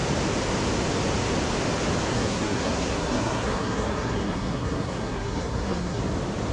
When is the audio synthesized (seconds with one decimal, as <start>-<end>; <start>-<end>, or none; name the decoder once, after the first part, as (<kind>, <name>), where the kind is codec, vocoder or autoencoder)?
2.1-6.0 (codec, SNAC)